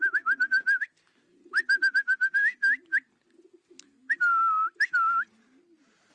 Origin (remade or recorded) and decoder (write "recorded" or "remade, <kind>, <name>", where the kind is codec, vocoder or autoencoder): recorded